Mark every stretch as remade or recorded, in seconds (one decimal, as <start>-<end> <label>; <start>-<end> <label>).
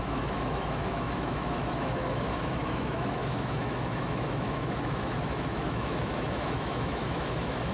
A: 0.0-7.7 remade